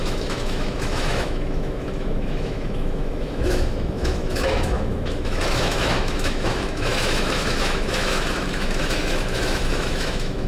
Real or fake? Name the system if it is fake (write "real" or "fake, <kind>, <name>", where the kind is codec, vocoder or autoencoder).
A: fake, autoencoder, DAC-VAE